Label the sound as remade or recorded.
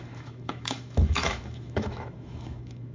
remade